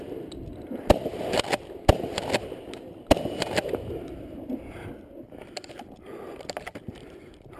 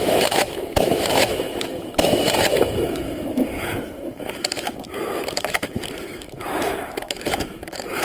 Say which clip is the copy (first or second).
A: second